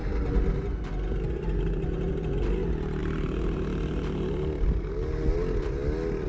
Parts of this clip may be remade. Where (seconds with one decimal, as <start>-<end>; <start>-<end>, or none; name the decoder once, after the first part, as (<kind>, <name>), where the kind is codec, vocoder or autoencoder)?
none